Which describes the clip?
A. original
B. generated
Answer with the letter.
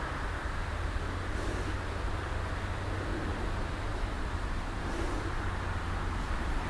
A